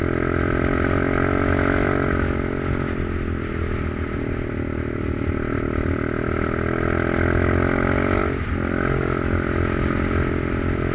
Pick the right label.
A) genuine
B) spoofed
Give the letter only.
A